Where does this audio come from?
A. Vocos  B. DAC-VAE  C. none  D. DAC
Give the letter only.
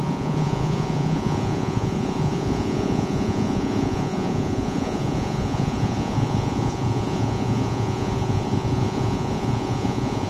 A